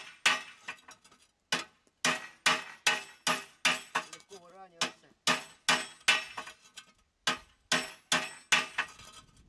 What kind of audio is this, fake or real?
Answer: real